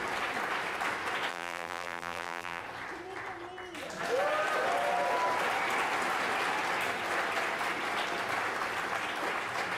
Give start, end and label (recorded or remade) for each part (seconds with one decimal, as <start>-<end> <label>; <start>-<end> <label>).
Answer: 0.0-1.3 recorded; 1.3-2.6 remade; 2.6-9.8 recorded